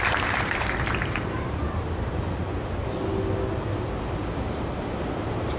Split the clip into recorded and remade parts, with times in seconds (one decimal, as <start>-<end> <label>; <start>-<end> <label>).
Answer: 0.0-1.6 remade; 1.6-5.0 recorded; 5.0-5.6 remade